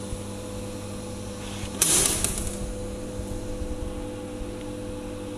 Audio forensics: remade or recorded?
recorded